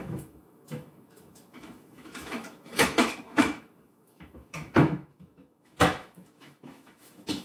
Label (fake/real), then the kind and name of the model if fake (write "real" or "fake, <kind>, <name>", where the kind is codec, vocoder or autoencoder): fake, autoencoder, DAC-VAE